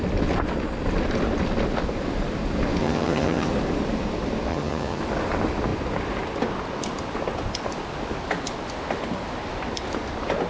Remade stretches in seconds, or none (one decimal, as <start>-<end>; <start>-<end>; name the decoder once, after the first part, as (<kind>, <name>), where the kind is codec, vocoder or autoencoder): 2.8-3.5 (vocoder, HiFi-GAN); 4.5-5.0